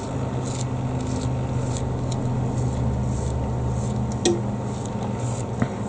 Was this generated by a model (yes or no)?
no